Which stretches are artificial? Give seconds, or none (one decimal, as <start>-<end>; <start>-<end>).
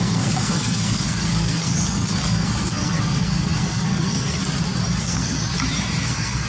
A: 0.0-4.4; 5.0-5.4; 6.0-6.5